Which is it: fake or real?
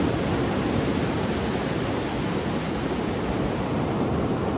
real